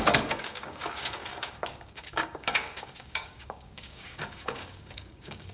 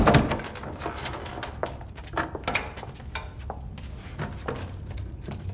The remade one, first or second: first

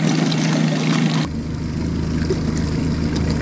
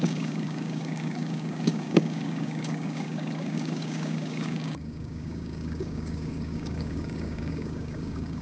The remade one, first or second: second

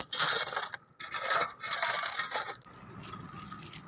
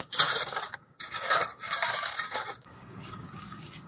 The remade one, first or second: second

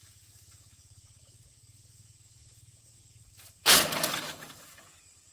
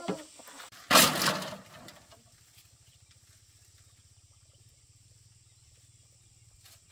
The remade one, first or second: first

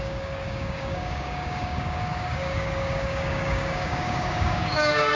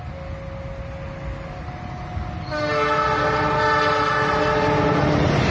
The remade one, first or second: first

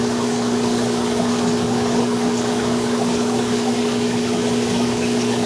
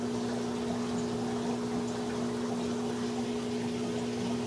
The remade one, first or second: first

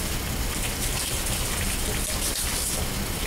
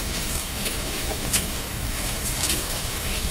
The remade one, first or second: second